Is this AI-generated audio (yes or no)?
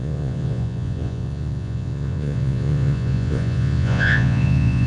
yes